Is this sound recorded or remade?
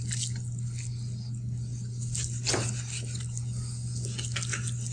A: recorded